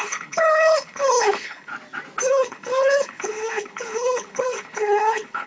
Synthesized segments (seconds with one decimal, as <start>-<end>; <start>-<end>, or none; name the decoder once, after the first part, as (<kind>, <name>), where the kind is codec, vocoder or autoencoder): 0.0-1.7 (codec, HILCodec); 2.3-5.5